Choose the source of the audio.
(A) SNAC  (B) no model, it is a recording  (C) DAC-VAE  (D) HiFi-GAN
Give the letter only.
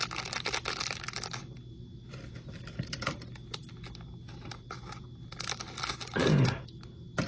B